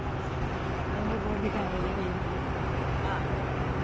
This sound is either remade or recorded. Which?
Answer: recorded